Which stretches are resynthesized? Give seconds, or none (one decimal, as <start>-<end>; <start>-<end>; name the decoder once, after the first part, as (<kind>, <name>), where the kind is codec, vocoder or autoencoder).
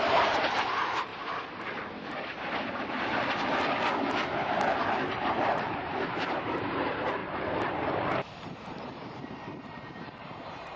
0.0-1.1 (vocoder, BigVGAN v2); 4.8-7.2; 8.3-10.8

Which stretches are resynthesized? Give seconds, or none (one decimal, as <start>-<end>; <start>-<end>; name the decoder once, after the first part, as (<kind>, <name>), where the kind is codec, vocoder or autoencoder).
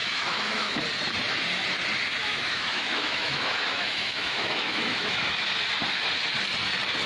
0.0-0.8 (autoencoder, DAC-VAE); 2.2-5.5